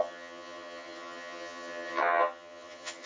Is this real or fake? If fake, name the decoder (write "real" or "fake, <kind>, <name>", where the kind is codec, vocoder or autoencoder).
fake, vocoder, HiFi-GAN